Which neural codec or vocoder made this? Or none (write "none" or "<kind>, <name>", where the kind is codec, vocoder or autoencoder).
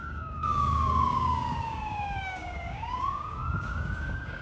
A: codec, DAC